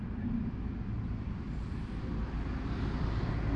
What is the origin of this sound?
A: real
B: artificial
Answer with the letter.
B